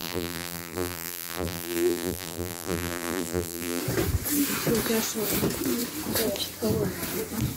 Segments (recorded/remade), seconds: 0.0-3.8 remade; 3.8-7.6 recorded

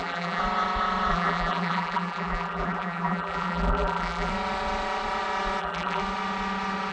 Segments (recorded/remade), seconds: 0.0-0.4 remade; 0.4-1.1 recorded; 1.1-4.3 remade; 4.3-5.6 recorded; 5.6-6.0 remade; 6.0-6.9 recorded

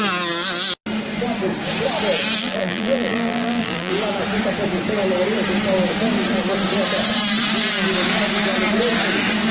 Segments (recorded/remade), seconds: 0.0-2.4 recorded; 2.4-3.9 remade; 3.9-9.5 recorded

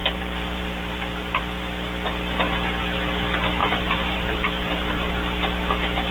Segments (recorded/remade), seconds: 0.0-1.4 remade; 1.4-3.6 recorded; 3.6-5.1 remade; 5.1-6.1 recorded

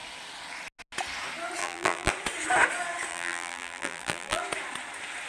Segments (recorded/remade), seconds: 0.0-1.6 recorded; 1.6-2.1 remade; 2.1-3.1 recorded; 3.1-4.4 remade; 4.4-5.3 recorded

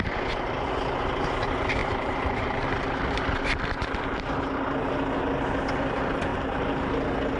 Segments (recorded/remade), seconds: 0.0-1.8 recorded; 1.8-2.7 remade; 2.7-6.3 recorded; 6.3-6.9 remade; 6.9-7.4 recorded